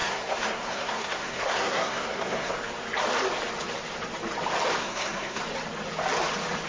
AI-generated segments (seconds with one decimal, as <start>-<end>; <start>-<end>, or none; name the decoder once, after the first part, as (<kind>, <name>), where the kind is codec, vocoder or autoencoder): 0.0-2.6 (codec, SNAC); 4.8-5.4